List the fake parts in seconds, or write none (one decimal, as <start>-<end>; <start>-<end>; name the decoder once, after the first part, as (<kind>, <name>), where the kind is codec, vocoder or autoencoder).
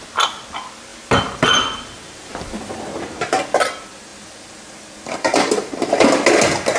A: 0.9-3.6 (vocoder, BigVGAN v2); 4.1-5.7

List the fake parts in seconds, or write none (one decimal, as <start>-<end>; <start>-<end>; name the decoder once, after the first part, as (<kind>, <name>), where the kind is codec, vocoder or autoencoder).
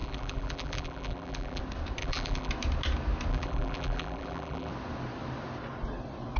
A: 0.0-1.6 (vocoder, BigVGAN v2); 2.0-2.5; 3.3-4.7